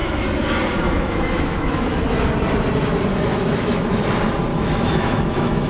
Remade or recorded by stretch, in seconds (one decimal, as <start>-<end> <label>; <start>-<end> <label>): 0.0-2.0 remade; 2.0-3.1 recorded; 3.1-4.0 remade; 4.0-4.5 recorded; 4.5-5.7 remade